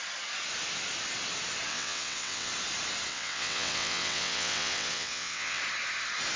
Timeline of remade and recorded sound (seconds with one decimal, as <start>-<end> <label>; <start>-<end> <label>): 0.0-1.7 recorded; 1.7-2.5 remade; 2.5-3.1 recorded; 3.1-5.6 remade; 5.6-6.4 recorded